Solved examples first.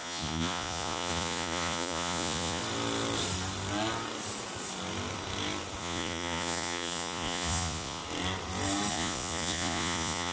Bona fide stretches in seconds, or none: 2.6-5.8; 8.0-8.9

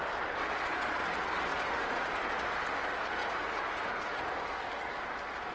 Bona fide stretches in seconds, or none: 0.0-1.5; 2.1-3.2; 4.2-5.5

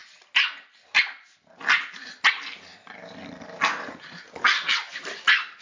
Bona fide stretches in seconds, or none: 0.0-5.6